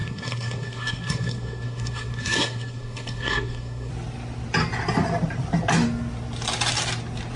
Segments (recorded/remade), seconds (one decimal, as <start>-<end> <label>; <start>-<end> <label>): 0.0-3.9 remade; 3.9-7.4 recorded